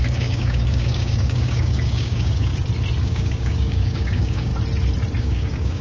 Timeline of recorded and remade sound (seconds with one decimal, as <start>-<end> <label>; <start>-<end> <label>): 0.0-2.5 remade; 2.5-3.0 recorded; 3.0-4.5 remade; 4.5-5.2 recorded; 5.2-5.8 remade